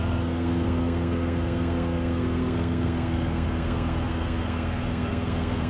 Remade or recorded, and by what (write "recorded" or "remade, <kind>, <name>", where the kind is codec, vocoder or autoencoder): remade, codec, SNAC